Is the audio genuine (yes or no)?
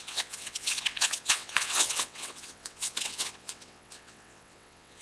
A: no